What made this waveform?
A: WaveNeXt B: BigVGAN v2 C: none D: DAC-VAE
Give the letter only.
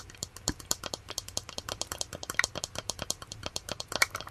B